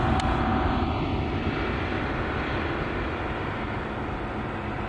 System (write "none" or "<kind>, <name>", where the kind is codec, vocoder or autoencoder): none